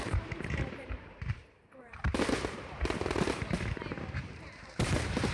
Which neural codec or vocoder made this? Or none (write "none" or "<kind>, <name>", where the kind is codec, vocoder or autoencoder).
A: vocoder, BigVGAN v2